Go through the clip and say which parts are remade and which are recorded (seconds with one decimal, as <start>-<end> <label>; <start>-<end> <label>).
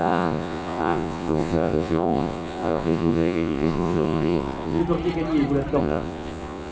0.0-4.8 remade; 4.8-5.8 recorded; 5.8-6.7 remade